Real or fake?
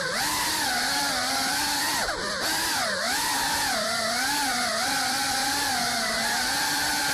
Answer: fake